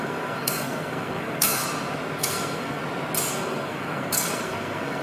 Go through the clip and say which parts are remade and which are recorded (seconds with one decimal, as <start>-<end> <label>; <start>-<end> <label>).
0.0-1.6 remade; 1.6-2.2 recorded; 2.2-2.8 remade; 2.8-3.3 recorded; 3.3-5.0 remade